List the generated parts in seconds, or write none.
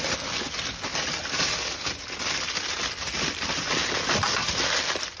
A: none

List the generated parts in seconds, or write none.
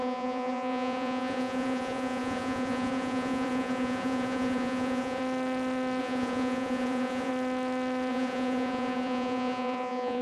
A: 0.0-5.2 (vocoder, Vocos); 6.0-7.3; 8.1-10.2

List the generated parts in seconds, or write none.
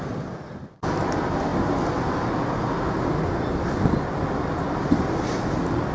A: none